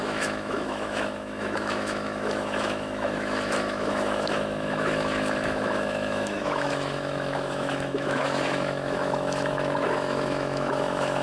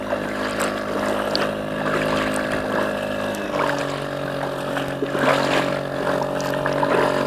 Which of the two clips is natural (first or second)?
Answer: second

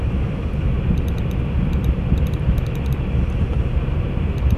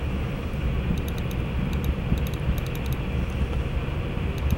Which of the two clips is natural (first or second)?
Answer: second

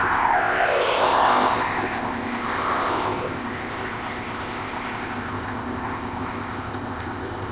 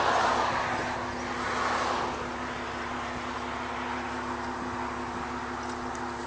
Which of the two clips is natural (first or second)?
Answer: second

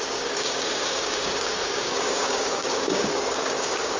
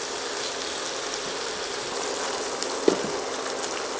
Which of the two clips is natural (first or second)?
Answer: second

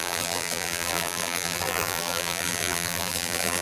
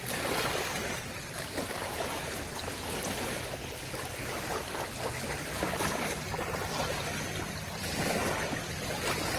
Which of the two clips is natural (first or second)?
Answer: second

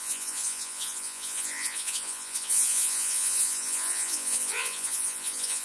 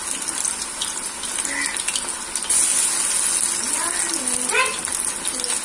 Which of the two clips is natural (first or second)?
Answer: second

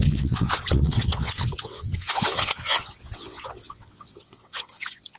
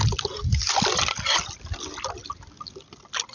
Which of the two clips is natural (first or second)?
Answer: second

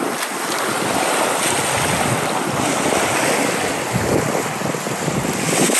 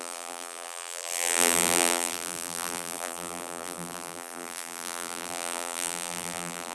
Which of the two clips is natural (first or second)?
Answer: first